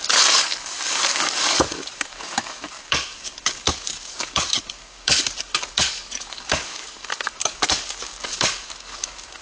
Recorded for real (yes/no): no